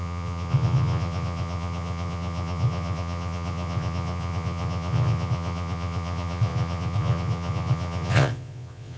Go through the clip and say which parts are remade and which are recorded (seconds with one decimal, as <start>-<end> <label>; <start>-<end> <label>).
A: 0.0-9.0 remade